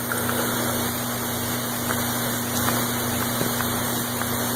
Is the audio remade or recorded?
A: recorded